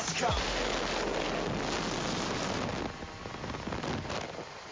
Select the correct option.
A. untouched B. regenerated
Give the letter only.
A